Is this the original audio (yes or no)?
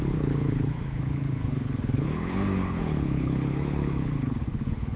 no